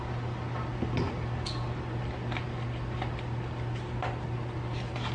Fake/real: real